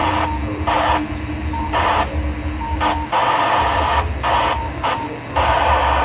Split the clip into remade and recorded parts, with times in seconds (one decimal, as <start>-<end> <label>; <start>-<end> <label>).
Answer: 0.0-3.2 recorded; 3.2-3.9 remade; 3.9-6.0 recorded